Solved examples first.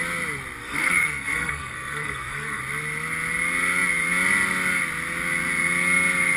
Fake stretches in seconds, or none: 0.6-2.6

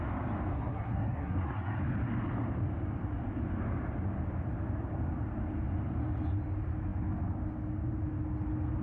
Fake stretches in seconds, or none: 0.5-1.8

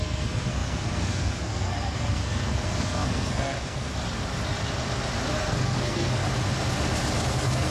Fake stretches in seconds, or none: 0.0-3.9; 5.4-6.2; 7.3-7.7

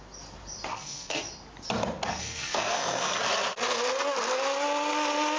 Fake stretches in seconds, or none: 0.7-1.2; 2.1-3.2

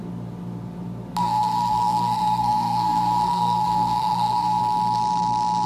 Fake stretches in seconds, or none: 1.2-4.6

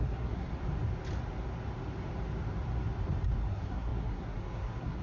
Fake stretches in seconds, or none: 0.0-0.5; 3.5-5.0

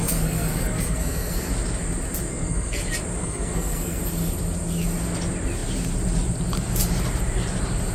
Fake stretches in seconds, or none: 0.0-1.5; 2.3-2.8; 3.2-4.0